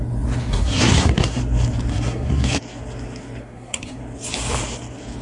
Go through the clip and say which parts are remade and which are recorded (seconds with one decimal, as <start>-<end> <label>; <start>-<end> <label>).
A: 0.0-0.5 recorded; 0.5-1.4 remade; 1.4-1.9 recorded; 1.9-2.6 remade; 2.6-3.4 recorded; 3.4-4.0 remade; 4.0-5.2 recorded